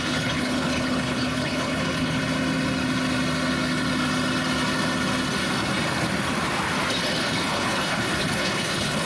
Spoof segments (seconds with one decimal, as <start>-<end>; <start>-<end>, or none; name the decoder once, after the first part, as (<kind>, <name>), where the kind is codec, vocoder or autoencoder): 0.0-2.2 (codec, HILCodec); 7.2-9.1